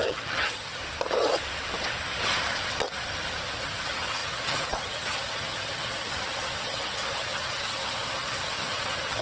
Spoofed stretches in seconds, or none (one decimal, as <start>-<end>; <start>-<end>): 0.0-0.8; 3.6-9.2